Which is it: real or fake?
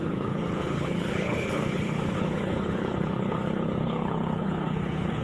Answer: fake